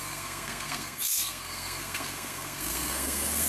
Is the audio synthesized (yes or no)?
yes